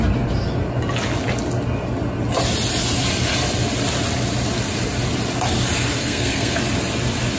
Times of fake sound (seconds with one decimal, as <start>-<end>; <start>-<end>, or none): 6.0-6.6

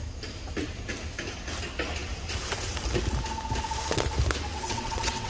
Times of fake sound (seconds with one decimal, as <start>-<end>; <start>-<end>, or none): 4.5-5.3

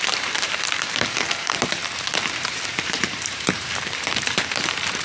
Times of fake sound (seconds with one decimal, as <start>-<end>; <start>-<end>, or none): 0.0-5.0

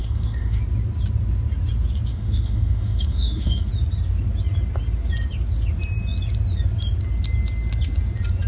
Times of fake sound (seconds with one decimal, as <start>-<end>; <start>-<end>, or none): 0.0-0.6; 2.1-3.7

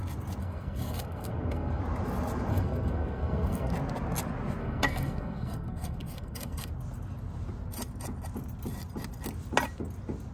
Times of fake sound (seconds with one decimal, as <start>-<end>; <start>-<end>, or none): 0.4-1.8; 2.5-3.7; 4.6-6.7

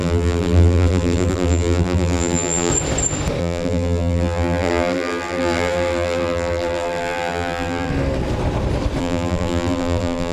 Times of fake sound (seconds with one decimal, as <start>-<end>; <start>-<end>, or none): 0.0-2.7; 3.4-7.9; 9.0-10.3